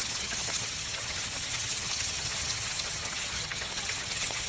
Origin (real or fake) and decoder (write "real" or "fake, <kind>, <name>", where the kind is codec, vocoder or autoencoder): fake, vocoder, HiFi-GAN